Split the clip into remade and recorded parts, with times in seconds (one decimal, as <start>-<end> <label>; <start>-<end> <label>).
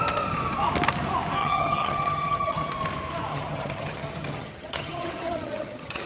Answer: 0.0-1.4 recorded; 1.4-2.7 remade; 2.7-3.3 recorded; 3.3-6.1 remade